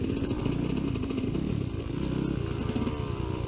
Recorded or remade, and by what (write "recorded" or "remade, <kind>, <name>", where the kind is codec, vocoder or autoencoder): recorded